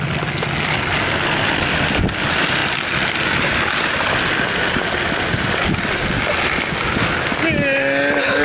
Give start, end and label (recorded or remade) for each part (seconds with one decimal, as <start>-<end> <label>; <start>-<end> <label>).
0.0-8.4 recorded